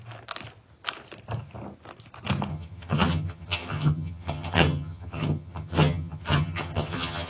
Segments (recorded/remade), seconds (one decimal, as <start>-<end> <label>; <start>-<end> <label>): 0.0-2.5 recorded; 2.5-7.3 remade